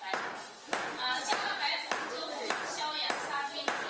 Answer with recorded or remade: recorded